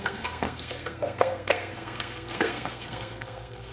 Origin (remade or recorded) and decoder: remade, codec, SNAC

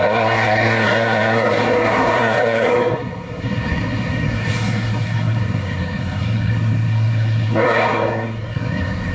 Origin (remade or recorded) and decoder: remade, codec, SNAC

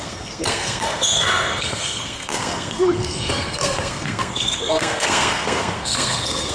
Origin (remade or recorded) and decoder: remade, codec, SNAC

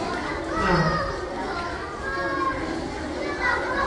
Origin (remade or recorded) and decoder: recorded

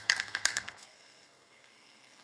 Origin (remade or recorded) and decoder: remade, codec, SNAC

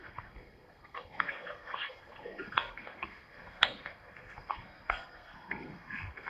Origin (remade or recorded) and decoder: remade, codec, SNAC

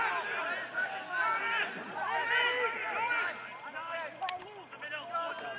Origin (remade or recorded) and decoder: recorded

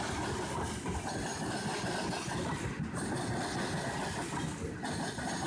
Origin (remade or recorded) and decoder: recorded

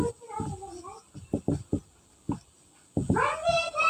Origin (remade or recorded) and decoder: recorded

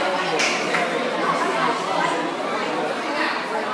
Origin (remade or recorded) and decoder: recorded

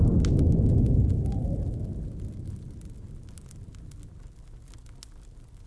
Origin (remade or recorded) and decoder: recorded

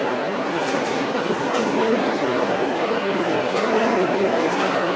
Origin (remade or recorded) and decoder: remade, codec, SNAC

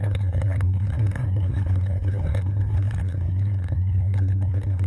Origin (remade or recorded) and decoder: remade, codec, SNAC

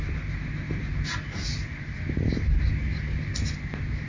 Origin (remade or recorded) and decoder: recorded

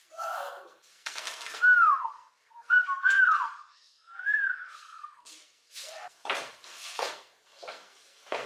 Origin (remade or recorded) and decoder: remade, codec, SNAC